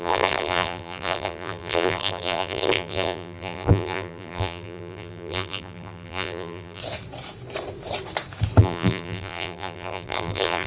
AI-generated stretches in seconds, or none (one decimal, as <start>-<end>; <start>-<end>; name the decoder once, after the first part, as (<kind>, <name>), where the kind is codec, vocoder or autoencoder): 0.0-6.8 (vocoder, BigVGAN v2); 8.6-10.7